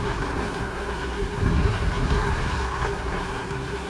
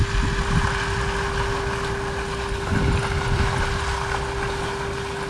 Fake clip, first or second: first